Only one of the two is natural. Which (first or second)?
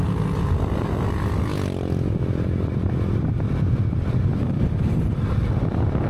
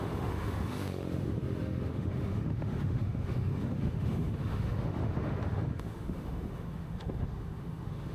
first